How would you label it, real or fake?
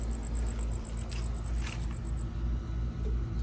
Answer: real